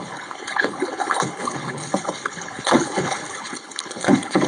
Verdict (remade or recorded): remade